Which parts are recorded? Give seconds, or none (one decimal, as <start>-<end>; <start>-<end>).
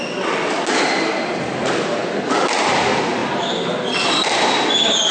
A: 0.0-5.1